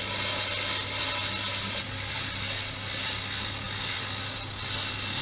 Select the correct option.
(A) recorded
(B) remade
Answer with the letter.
A